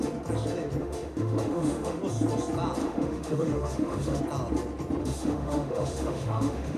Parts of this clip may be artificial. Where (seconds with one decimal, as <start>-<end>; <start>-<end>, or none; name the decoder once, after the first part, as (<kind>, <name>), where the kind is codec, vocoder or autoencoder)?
0.8-2.0 (autoencoder, DAC-VAE); 2.8-4.2; 5.0-6.8